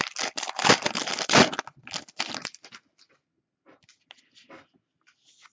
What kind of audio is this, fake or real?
real